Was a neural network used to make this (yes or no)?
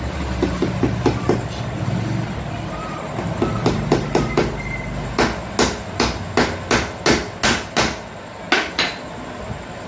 no